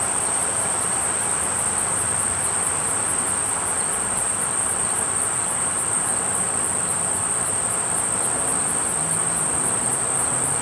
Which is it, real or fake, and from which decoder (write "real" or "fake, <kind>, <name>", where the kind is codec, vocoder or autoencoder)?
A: fake, vocoder, BigVGAN v2